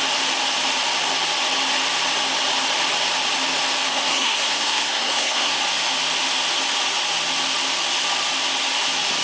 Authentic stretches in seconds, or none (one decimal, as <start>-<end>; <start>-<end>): 0.0-3.9; 5.6-9.2